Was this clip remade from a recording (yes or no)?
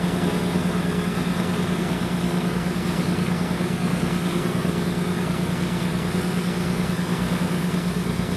yes